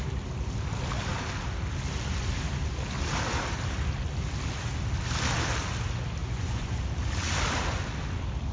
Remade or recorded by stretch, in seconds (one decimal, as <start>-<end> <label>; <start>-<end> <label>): 0.0-6.2 recorded; 6.2-6.8 remade; 6.8-8.5 recorded